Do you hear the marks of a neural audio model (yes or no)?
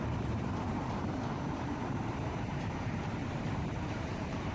yes